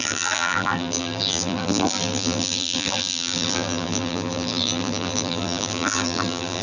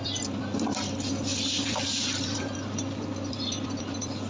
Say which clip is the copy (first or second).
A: first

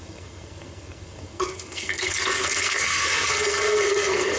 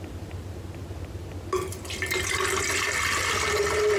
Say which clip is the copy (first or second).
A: first